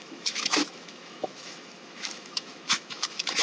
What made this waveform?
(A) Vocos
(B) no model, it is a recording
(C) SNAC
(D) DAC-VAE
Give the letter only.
D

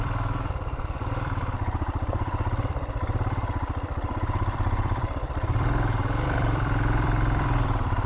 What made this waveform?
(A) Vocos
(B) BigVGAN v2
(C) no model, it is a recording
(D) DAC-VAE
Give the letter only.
B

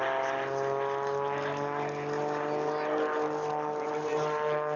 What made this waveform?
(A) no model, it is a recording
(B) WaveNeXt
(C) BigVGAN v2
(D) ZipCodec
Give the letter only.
A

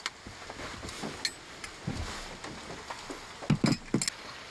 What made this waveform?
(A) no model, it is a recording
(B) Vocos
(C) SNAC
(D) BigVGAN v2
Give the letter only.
A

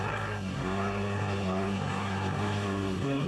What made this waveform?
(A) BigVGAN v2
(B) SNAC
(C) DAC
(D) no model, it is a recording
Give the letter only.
B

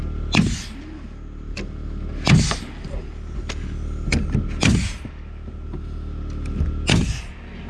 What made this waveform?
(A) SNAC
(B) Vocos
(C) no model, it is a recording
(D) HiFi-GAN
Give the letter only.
C